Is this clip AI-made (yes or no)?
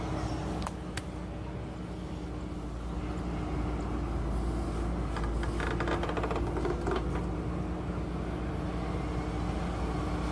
no